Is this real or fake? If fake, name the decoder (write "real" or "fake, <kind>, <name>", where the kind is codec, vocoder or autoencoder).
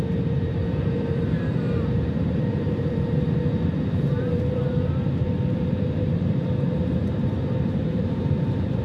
fake, vocoder, BigVGAN v2